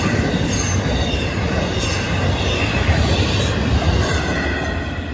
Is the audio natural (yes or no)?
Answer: yes